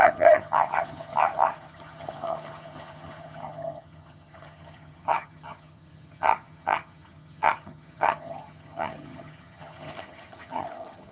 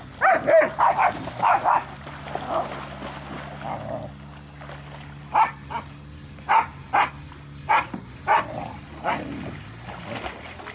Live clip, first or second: second